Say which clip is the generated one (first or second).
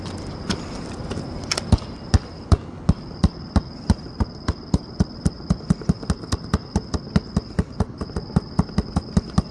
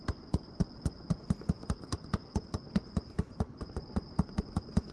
second